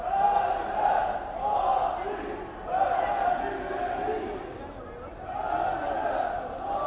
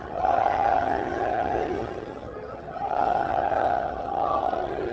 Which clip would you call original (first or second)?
first